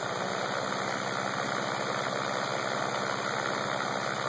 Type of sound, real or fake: real